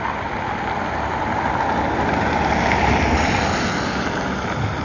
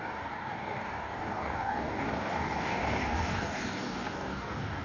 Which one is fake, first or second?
second